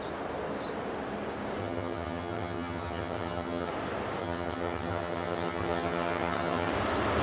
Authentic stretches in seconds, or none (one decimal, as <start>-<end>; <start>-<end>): 0.0-1.6; 3.7-4.2; 6.7-7.2